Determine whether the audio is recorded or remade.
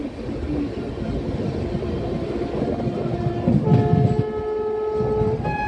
recorded